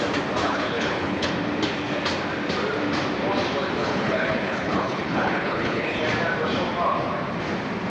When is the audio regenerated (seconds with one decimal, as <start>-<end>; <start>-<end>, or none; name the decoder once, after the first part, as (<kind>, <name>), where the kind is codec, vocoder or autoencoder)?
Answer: 0.4-1.3 (codec, HILCodec); 3.8-6.0